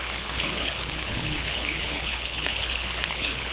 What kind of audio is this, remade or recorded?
remade